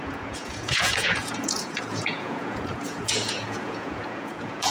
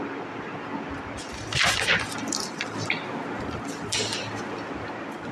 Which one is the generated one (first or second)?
first